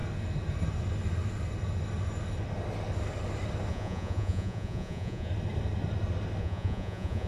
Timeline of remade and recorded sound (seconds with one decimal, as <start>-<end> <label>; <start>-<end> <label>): 0.0-3.7 recorded; 3.7-5.3 remade; 5.3-6.4 recorded; 6.4-7.3 remade